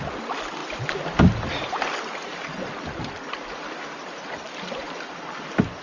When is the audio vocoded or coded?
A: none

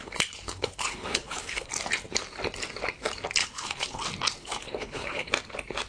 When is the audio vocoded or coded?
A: 0.0-1.7 (codec, HILCodec); 3.4-4.0; 4.4-5.3

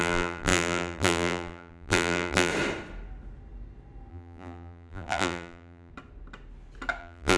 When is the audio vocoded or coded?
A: 0.0-2.5 (vocoder, BigVGAN v2); 4.1-5.9; 7.0-7.4

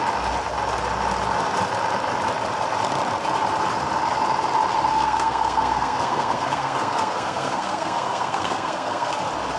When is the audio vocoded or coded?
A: 4.9-9.1 (codec, SNAC)

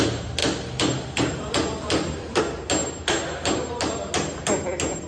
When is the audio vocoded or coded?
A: 0.4-2.4 (vocoder, BigVGAN v2)

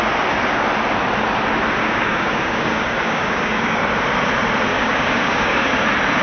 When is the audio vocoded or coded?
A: 1.8-3.8 (codec, DAC); 4.7-5.7

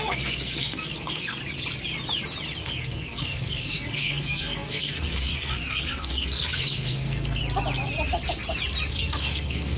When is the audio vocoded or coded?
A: 0.0-1.4 (codec, SNAC); 2.6-7.4; 8.9-9.8